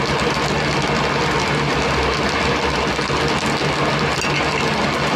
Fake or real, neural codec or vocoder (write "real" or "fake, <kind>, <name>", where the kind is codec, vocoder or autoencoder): real